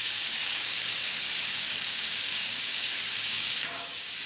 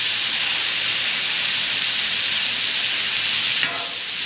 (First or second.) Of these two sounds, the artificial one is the first